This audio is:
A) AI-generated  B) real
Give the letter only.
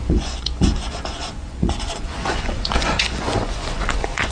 A